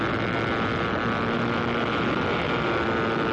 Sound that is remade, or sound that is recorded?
recorded